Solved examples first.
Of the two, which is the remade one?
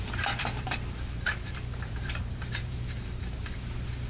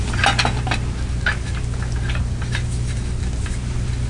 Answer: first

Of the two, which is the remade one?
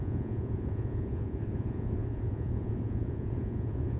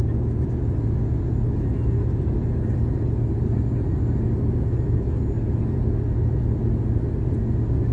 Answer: first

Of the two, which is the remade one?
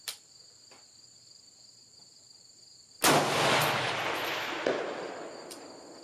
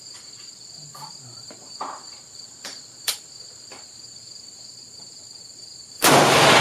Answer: second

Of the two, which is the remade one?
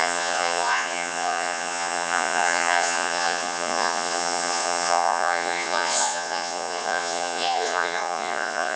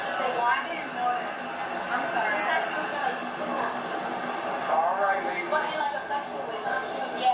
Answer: first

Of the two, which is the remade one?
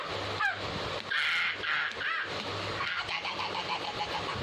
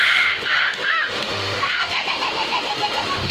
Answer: second